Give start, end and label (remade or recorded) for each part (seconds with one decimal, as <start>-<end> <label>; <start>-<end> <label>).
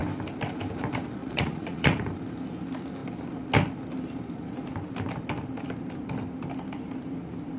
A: 0.0-1.2 recorded; 1.2-2.1 remade; 2.1-7.6 recorded